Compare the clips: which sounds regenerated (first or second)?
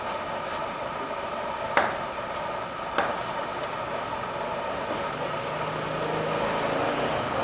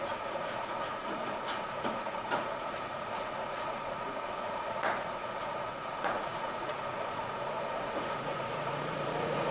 second